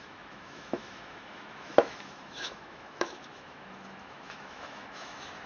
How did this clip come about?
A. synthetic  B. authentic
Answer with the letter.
A